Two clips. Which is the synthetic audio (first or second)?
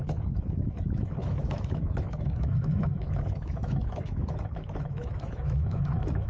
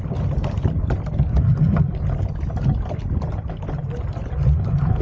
first